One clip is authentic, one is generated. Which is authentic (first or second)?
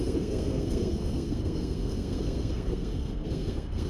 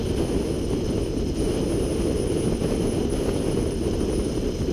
second